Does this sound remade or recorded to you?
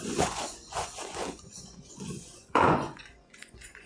remade